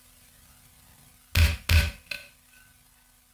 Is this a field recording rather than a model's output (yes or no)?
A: yes